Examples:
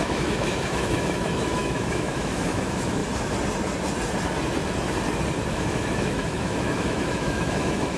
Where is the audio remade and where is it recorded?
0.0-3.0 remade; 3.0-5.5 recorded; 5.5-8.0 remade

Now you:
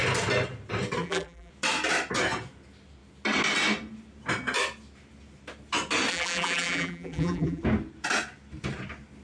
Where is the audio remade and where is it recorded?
0.0-1.0 recorded; 1.0-1.5 remade; 1.5-6.1 recorded; 6.1-7.6 remade; 7.6-9.2 recorded

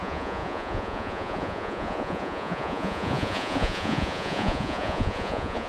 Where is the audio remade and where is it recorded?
0.0-5.7 remade

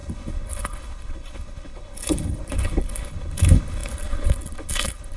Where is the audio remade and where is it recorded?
0.0-5.2 remade

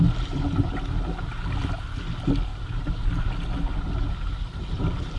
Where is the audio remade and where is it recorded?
0.0-2.5 recorded; 2.5-3.1 remade; 3.1-5.2 recorded